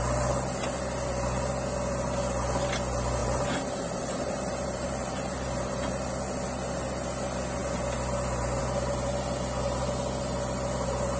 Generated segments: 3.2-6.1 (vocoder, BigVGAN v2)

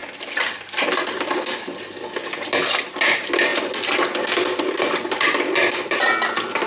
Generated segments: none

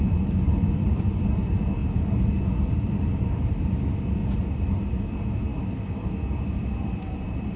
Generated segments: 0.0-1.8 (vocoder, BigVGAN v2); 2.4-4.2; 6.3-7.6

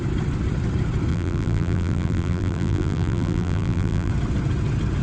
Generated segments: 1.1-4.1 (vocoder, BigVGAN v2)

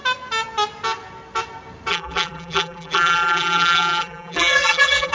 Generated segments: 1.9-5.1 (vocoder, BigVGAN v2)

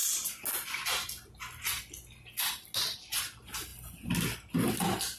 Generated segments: none